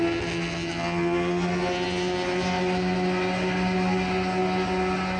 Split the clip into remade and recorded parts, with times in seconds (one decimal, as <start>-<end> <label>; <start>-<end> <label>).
0.0-5.2 recorded